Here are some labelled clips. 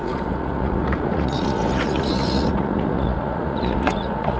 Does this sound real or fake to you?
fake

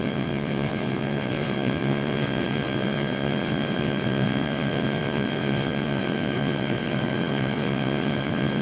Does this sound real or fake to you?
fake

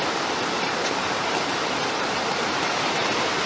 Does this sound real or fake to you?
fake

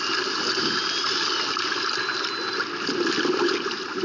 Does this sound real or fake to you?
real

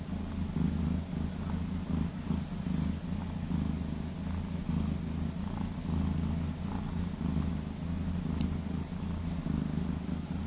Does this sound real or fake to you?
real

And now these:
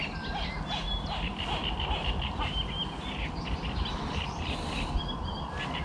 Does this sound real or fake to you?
real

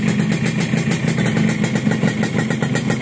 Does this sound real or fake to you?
real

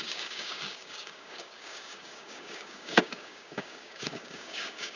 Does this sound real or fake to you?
fake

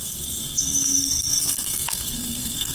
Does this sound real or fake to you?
fake